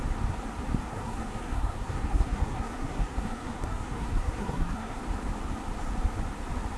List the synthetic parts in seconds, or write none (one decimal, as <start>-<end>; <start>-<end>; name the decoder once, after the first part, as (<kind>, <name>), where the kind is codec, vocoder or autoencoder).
0.9-5.0 (codec, SNAC)